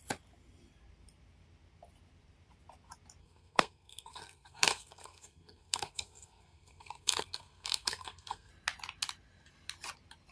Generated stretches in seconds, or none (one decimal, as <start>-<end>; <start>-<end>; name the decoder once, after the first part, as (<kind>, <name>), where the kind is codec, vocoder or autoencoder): 3.2-8.5 (codec, SNAC)